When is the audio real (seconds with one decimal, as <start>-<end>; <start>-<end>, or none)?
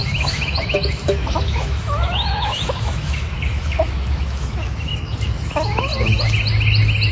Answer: 5.9-7.1